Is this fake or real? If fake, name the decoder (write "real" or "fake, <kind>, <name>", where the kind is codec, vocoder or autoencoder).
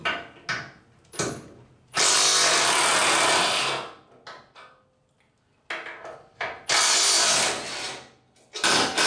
real